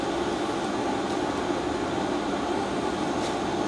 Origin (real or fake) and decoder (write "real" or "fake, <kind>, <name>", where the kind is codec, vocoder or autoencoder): real